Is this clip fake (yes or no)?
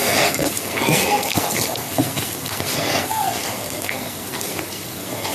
yes